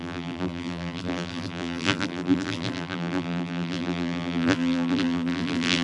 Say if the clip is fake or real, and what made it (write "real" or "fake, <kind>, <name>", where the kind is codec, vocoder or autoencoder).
fake, vocoder, BigVGAN v2